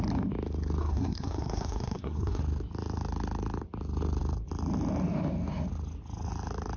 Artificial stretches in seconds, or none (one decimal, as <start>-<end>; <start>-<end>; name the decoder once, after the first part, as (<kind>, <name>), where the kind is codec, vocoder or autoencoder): 0.8-2.4 (codec, SNAC)